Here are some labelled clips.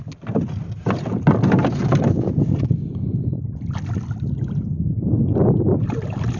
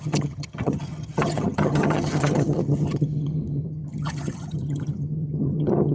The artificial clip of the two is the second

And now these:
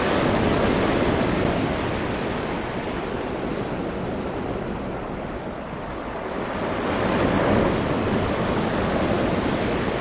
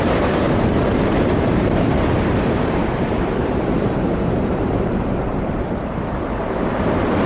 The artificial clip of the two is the second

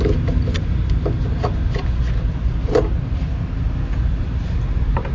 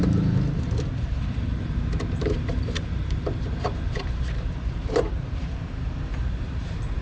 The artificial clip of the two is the second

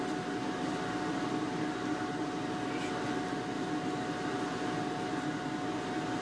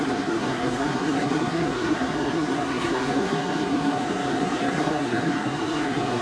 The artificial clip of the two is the second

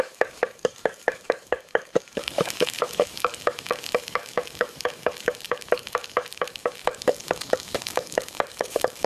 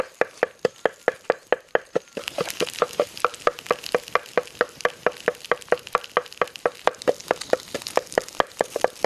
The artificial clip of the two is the first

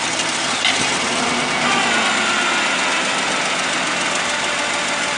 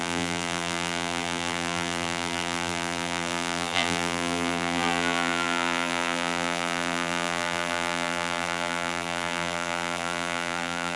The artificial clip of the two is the second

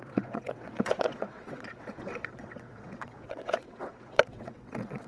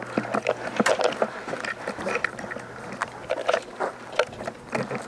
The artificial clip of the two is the first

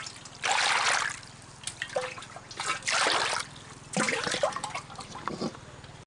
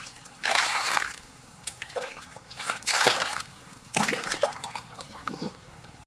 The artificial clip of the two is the second